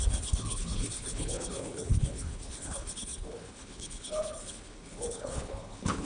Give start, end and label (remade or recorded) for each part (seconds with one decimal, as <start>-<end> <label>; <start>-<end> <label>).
0.0-6.0 remade